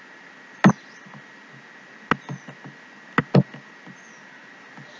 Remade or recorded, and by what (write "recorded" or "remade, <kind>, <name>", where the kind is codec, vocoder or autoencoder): recorded